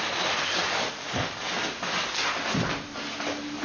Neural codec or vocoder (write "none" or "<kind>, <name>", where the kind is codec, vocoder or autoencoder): none